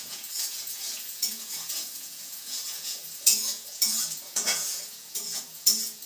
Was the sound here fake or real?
fake